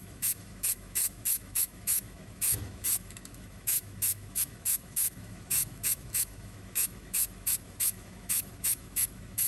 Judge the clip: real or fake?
fake